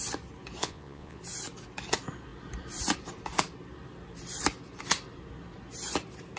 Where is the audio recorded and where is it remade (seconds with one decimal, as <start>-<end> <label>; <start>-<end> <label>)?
0.0-0.6 recorded; 0.6-1.2 remade; 1.2-6.4 recorded